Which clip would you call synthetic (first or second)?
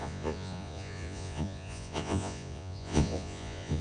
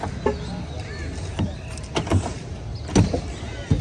first